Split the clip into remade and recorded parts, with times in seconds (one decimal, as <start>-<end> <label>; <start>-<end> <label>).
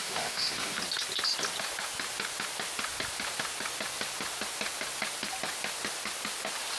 0.0-0.8 remade; 0.8-6.8 recorded